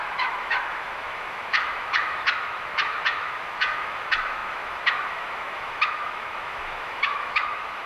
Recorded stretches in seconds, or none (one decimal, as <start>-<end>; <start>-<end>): none